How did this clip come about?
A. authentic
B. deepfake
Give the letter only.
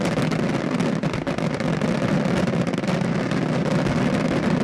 A